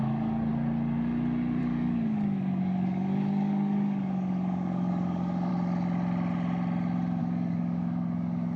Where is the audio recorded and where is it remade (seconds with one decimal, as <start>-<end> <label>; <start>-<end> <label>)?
0.0-0.5 remade; 0.5-1.6 recorded; 1.6-5.5 remade; 5.5-7.2 recorded; 7.2-8.6 remade